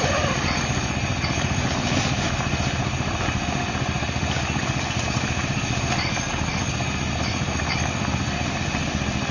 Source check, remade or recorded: recorded